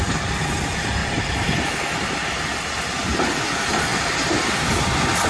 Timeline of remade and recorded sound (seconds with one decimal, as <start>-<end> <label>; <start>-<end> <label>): 0.0-1.0 recorded; 1.0-2.3 remade; 2.3-3.9 recorded; 3.9-4.5 remade; 4.5-5.3 recorded